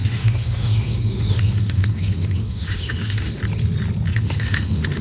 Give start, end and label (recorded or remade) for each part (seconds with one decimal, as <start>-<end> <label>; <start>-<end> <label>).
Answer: 0.0-3.4 remade; 3.4-4.1 recorded; 4.1-5.0 remade